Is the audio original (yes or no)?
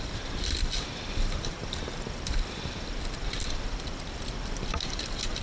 no